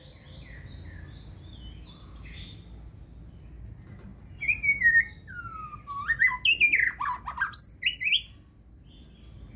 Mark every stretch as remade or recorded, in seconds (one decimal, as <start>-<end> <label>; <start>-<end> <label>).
0.0-9.6 recorded